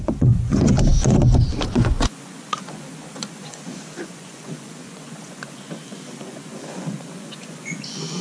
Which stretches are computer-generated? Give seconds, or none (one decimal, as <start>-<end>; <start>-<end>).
0.0-8.2